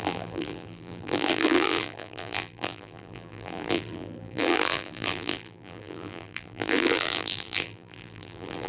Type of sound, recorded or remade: remade